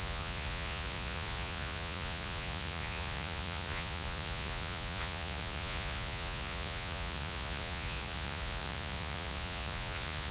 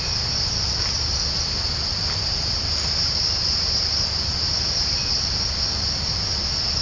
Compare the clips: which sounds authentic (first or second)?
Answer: second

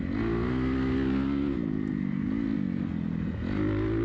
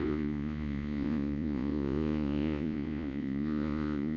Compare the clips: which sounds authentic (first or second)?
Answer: first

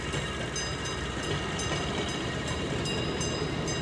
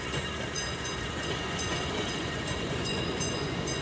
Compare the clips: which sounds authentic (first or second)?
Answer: first